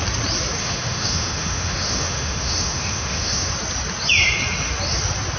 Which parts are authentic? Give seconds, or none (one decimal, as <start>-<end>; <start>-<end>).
0.0-0.6; 3.5-5.4